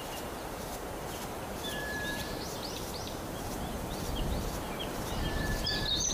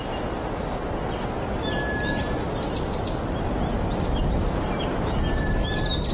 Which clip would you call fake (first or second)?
first